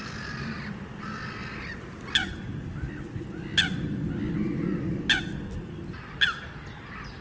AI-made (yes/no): no